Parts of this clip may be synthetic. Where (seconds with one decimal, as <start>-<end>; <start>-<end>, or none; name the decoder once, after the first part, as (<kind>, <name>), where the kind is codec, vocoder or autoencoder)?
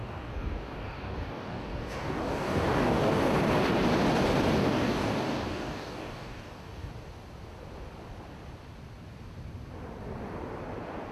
0.0-3.3 (codec, DAC); 4.6-6.9